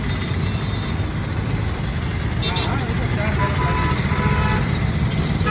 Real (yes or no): yes